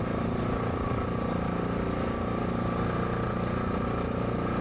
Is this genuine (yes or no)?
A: yes